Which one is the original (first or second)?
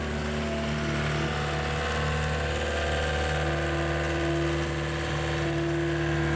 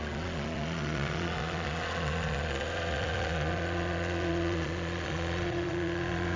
first